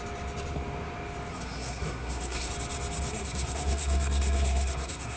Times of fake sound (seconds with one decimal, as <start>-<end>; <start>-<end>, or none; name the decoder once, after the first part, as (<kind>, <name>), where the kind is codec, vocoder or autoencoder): 1.3-2.5 (codec, SNAC); 3.1-5.2